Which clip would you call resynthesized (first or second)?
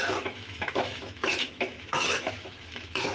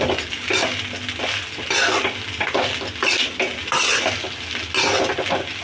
first